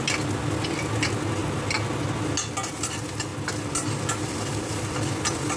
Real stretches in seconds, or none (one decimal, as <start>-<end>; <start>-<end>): 0.0-5.6